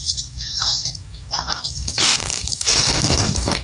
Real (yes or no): no